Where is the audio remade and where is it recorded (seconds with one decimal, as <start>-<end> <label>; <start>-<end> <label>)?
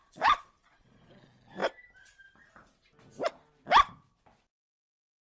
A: 0.0-1.1 remade; 1.1-5.2 recorded